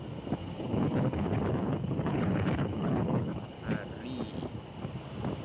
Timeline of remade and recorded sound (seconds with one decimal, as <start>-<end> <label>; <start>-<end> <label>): 0.0-0.4 recorded; 0.4-3.6 remade; 3.6-5.4 recorded